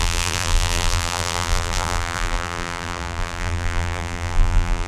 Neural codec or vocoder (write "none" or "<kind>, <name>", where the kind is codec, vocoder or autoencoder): vocoder, BigVGAN v2